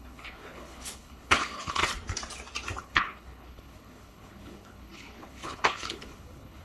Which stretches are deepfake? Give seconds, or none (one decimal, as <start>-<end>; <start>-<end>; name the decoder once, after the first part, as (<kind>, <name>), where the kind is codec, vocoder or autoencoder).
0.0-1.8 (codec, HILCodec); 2.8-6.6